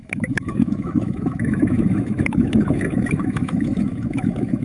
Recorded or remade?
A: remade